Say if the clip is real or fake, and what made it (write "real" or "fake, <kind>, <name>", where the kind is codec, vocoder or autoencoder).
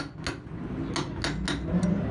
real